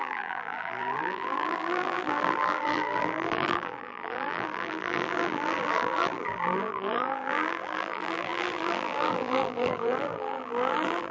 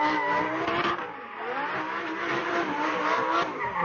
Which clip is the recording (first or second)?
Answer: second